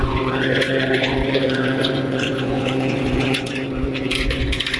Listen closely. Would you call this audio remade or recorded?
remade